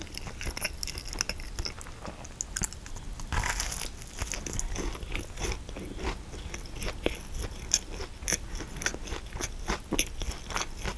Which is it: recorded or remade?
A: recorded